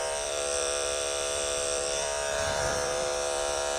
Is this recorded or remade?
remade